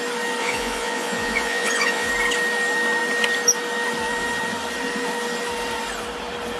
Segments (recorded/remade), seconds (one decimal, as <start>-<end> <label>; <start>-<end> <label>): 0.0-0.4 recorded; 0.4-2.1 remade; 2.1-6.6 recorded